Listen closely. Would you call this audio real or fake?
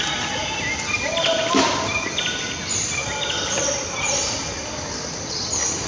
real